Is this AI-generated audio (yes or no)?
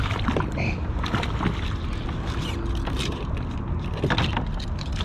no